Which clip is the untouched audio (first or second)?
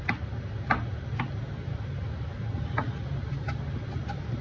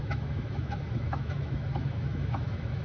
first